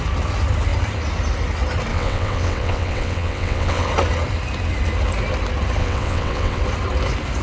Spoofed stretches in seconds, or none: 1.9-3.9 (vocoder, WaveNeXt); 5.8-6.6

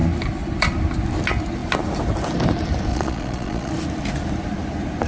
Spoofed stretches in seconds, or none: 2.9-3.7 (vocoder, Vocos)

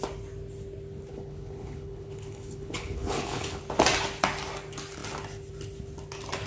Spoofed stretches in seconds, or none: 1.1-3.6 (codec, HILCodec)

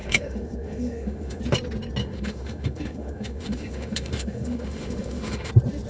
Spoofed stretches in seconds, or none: 0.0-1.4 (autoencoder, DAC-VAE); 2.0-5.5

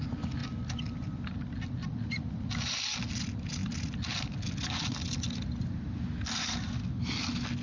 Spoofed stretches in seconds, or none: none

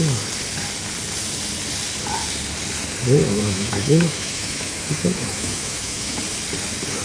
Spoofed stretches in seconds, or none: 3.2-6.2 (autoencoder, DAC-VAE)

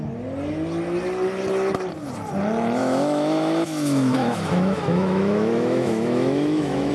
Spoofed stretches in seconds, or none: 2.8-6.9 (autoencoder, DAC-VAE)